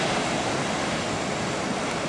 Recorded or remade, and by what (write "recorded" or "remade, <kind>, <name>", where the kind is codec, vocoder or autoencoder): recorded